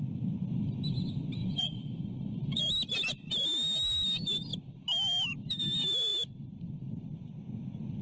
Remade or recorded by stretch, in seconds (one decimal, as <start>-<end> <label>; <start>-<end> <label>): 0.0-1.4 recorded; 1.4-2.6 remade; 2.6-8.0 recorded